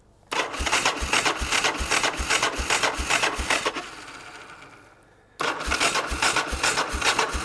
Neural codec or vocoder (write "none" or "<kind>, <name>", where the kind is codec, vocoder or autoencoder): none